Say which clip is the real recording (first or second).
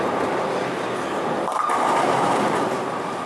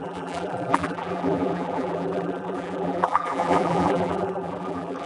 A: first